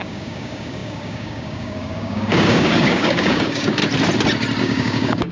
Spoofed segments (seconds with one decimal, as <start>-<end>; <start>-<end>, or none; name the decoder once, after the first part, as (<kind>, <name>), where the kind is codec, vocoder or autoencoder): 0.0-3.8 (codec, DAC); 4.6-5.3